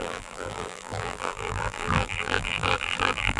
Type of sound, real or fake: fake